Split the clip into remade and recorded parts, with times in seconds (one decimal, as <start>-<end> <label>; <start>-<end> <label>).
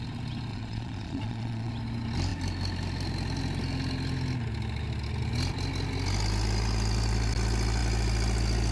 0.0-0.5 recorded; 0.5-1.7 remade; 1.7-8.7 recorded